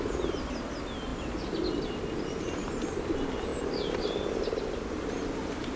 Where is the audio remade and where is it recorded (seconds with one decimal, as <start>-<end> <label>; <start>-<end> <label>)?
0.0-5.8 recorded